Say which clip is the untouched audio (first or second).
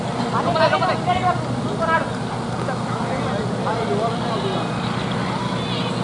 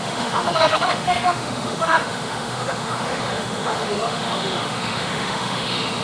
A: first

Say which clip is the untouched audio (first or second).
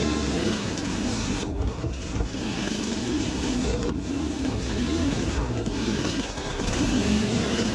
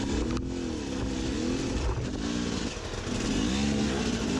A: second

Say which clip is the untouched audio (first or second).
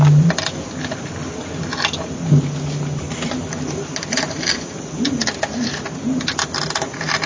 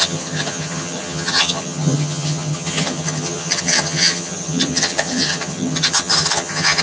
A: first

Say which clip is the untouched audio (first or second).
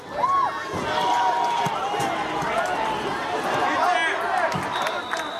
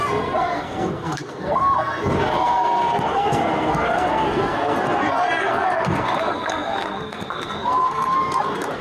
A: first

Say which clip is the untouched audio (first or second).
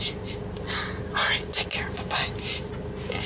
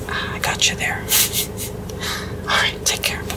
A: first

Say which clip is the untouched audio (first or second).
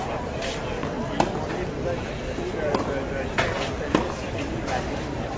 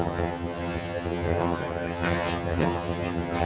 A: first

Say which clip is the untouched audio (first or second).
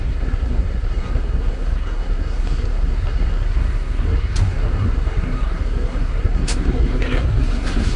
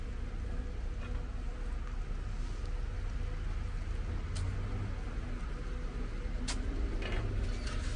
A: second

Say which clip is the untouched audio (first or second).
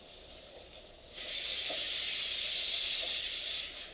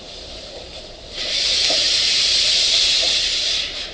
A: first